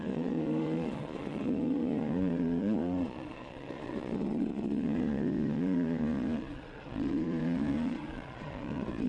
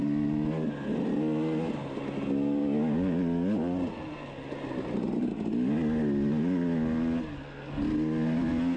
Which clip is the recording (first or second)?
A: second